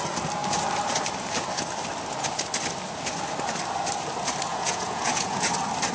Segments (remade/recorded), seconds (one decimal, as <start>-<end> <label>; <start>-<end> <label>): 0.0-4.5 recorded; 4.5-5.5 remade; 5.5-5.9 recorded